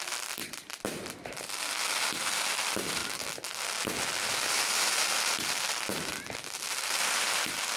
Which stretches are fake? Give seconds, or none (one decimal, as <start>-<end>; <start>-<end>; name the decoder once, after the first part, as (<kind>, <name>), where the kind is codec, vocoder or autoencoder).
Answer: 0.0-3.0 (vocoder, BigVGAN v2); 4.5-7.8